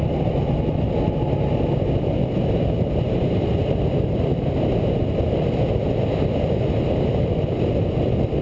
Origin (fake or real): real